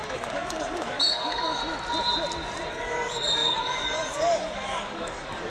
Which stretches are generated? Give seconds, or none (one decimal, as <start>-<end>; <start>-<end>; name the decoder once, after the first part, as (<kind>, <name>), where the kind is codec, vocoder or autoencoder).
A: 0.0-1.6 (codec, DAC); 2.7-5.5